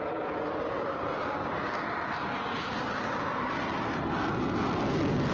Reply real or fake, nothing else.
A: real